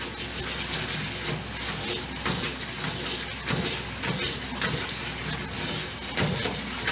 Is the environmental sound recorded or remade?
recorded